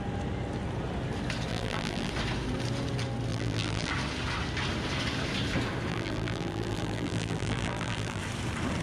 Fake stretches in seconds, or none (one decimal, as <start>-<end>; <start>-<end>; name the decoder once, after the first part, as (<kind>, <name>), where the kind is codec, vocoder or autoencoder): 1.5-2.1 (vocoder, BigVGAN v2); 3.3-3.9; 5.9-8.2